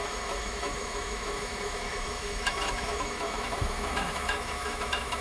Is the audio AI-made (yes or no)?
yes